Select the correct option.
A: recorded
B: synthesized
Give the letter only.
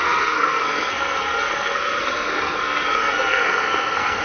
B